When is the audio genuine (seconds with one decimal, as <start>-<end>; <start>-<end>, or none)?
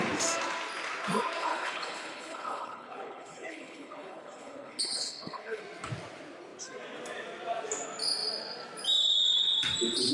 0.0-1.4; 5.6-10.1